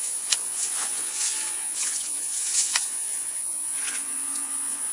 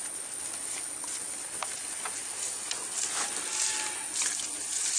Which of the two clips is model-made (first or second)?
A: first